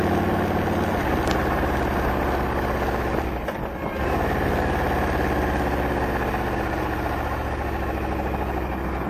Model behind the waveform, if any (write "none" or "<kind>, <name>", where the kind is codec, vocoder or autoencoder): none